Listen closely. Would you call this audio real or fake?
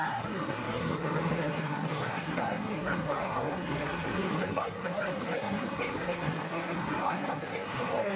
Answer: fake